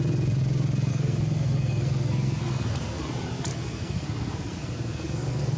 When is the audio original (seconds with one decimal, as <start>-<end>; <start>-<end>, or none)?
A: 0.0-0.9; 3.0-3.5